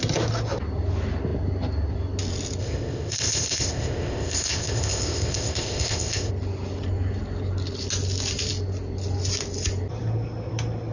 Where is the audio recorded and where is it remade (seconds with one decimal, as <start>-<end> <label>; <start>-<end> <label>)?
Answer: 0.0-2.6 recorded; 2.6-6.3 remade; 6.3-10.9 recorded